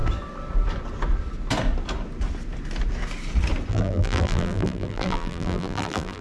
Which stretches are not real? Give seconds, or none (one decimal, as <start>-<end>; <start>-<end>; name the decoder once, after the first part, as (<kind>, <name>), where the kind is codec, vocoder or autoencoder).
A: 3.7-6.2 (vocoder, BigVGAN v2)